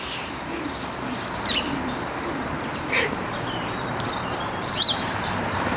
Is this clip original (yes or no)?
no